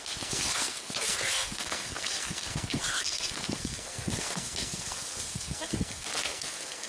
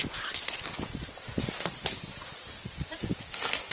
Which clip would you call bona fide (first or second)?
second